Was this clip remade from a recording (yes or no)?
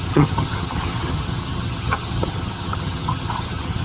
yes